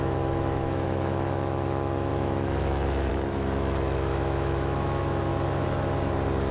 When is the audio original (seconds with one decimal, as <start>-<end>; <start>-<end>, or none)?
5.3-6.5